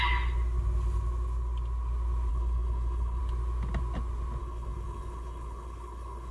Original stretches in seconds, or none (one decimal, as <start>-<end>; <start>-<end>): 0.0-2.3; 3.2-4.4